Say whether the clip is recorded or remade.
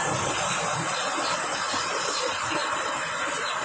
recorded